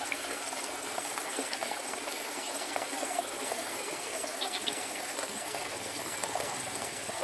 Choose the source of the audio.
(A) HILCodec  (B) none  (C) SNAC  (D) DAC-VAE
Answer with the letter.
C